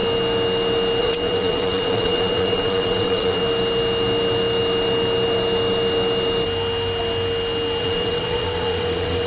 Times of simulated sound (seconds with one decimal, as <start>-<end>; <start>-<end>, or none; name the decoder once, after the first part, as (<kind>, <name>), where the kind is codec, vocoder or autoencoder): 1.0-3.4 (vocoder, WaveNeXt); 7.8-9.3

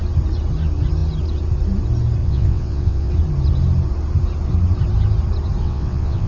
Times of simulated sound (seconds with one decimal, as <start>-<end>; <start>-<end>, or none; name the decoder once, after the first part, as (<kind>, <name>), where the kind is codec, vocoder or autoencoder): 2.2-3.1 (vocoder, WaveNeXt); 5.6-6.3

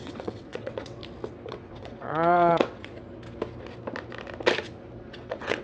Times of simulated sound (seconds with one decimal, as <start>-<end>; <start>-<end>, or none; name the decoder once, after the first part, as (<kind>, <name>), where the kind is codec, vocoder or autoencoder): 0.0-1.0 (vocoder, WaveNeXt); 1.5-2.9; 5.0-5.6

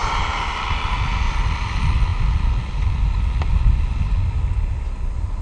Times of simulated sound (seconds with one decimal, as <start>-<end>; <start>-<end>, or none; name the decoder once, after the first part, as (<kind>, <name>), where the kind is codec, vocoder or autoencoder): none

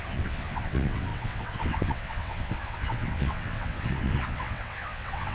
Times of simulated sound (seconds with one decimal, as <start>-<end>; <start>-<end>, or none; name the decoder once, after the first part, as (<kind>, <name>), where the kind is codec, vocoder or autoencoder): 0.0-5.3 (vocoder, WaveNeXt)

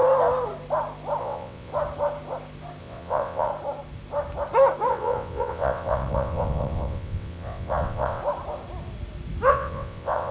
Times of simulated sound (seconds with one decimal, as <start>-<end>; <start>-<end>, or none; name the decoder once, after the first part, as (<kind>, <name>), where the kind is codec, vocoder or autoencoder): 1.2-1.7 (vocoder, WaveNeXt); 2.8-3.5; 4.9-8.2; 9.5-10.3

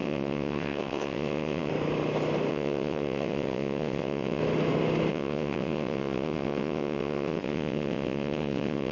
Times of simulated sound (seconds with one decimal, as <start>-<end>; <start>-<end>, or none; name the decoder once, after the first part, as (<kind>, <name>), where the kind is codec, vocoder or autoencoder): 0.0-1.7 (vocoder, WaveNeXt); 2.5-4.4; 5.1-8.9

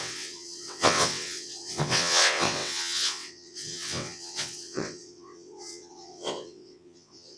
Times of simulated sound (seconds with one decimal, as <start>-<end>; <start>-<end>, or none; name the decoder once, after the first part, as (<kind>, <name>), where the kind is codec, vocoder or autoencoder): 0.0-7.4 (vocoder, WaveNeXt)